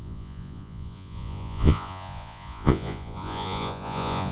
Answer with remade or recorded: remade